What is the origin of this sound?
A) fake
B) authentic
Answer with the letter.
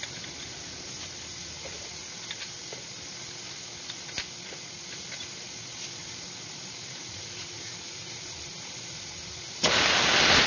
B